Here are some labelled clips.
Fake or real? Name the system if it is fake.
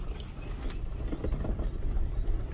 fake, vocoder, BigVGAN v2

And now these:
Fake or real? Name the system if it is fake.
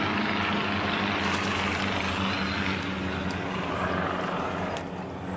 real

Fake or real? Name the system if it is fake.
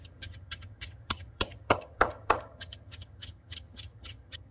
fake, vocoder, HiFi-GAN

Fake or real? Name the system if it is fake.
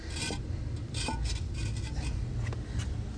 real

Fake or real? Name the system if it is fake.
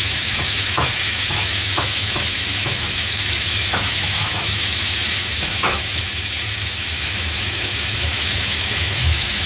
fake, autoencoder, DAC-VAE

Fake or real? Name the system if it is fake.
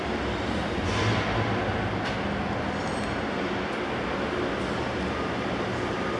real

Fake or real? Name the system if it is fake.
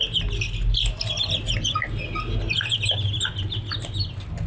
real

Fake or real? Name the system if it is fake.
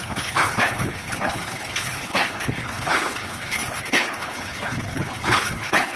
fake, codec, HILCodec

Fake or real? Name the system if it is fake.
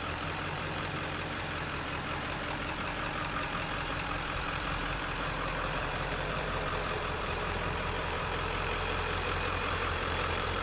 fake, vocoder, BigVGAN v2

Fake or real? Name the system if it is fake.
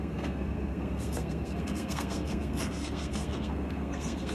fake, codec, SNAC